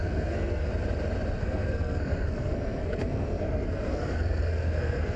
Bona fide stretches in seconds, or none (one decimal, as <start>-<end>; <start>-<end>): 0.7-1.4